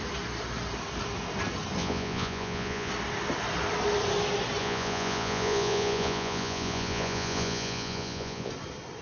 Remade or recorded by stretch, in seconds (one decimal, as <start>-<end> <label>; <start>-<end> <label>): 0.0-1.8 recorded; 1.8-2.9 remade; 2.9-4.6 recorded; 4.6-8.5 remade; 8.5-9.0 recorded